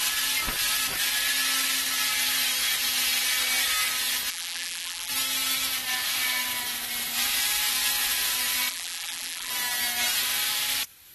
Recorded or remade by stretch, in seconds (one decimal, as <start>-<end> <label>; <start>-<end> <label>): 0.0-4.3 recorded; 4.3-5.1 remade; 5.1-8.7 recorded; 8.7-9.5 remade; 9.5-11.1 recorded